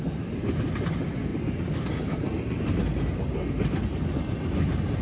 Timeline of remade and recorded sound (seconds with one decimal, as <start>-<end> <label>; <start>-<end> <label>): 0.0-5.0 recorded